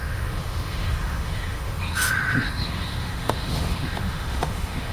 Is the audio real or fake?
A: fake